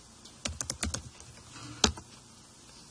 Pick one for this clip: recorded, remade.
recorded